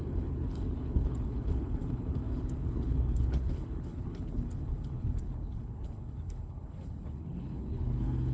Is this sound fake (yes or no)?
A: yes